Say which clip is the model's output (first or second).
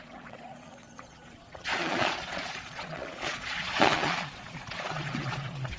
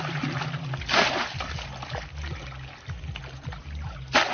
first